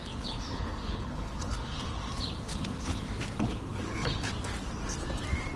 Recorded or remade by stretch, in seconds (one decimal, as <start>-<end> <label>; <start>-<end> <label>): 0.0-2.1 remade; 2.1-2.5 recorded; 2.5-3.1 remade; 3.1-3.5 recorded; 3.5-4.3 remade; 4.3-5.6 recorded